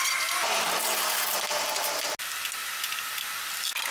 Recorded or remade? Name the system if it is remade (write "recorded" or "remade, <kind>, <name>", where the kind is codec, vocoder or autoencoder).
recorded